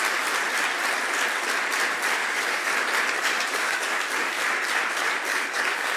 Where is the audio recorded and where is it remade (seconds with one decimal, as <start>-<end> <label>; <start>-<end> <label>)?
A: 0.0-2.2 recorded; 2.2-2.7 remade; 2.7-3.2 recorded; 3.2-4.4 remade; 4.4-5.3 recorded; 5.3-6.0 remade